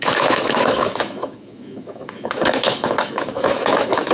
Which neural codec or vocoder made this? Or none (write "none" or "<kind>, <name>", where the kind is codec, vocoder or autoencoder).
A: autoencoder, DAC-VAE